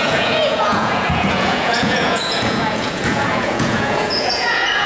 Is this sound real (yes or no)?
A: no